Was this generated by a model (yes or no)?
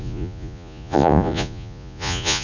yes